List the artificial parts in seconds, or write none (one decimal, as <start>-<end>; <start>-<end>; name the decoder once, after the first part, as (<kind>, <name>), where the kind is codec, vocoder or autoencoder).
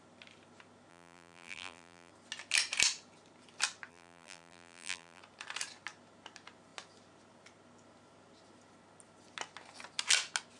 0.9-2.1 (vocoder, BigVGAN v2); 3.9-5.2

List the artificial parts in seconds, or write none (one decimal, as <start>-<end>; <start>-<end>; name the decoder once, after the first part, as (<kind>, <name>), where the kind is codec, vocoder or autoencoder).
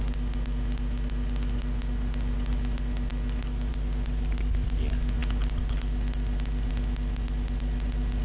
none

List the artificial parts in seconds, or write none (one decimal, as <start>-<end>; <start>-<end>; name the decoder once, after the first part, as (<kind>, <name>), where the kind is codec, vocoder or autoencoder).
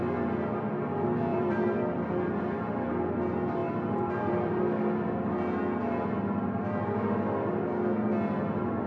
1.3-2.9 (vocoder, BigVGAN v2); 3.6-4.6